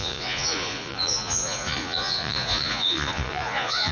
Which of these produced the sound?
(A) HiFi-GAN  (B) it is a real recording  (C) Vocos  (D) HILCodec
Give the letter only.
C